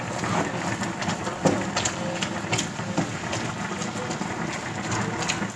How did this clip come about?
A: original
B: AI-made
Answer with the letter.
A